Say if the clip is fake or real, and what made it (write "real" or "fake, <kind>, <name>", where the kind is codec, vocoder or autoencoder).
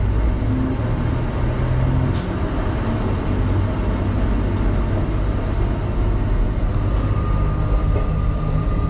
real